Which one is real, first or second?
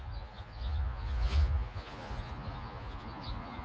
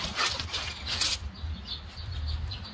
second